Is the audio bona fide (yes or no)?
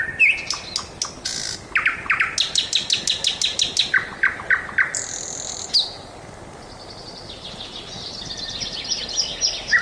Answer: yes